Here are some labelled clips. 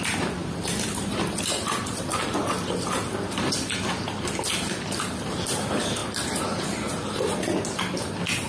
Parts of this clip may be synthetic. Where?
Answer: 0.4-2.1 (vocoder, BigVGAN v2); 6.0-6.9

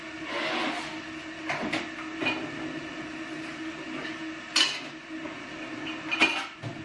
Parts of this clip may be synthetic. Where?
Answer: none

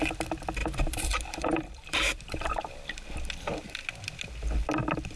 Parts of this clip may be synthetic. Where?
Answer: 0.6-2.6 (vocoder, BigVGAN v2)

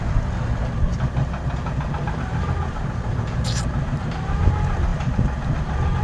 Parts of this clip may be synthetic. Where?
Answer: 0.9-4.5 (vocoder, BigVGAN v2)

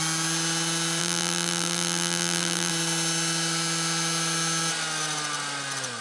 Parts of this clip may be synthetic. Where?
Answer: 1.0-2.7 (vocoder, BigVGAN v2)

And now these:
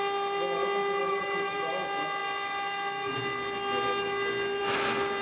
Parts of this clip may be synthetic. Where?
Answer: 1.0-1.7 (vocoder, BigVGAN v2)

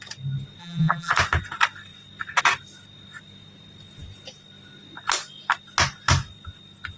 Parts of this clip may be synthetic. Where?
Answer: 0.6-1.1 (vocoder, BigVGAN v2)

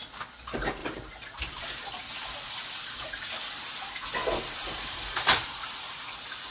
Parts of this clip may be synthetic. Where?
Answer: 0.8-3.3 (vocoder, BigVGAN v2); 4.2-5.7